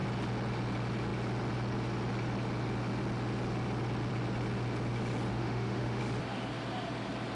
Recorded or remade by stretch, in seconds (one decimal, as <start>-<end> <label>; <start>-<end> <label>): 0.0-5.3 recorded; 5.3-6.0 remade; 6.0-7.3 recorded